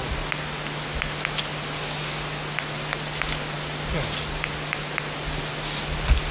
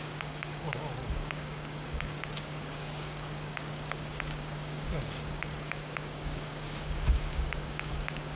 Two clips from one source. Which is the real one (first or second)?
first